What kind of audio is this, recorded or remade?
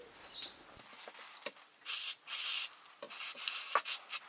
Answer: recorded